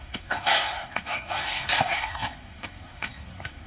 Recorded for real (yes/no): no